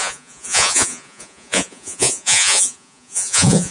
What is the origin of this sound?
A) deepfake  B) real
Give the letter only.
A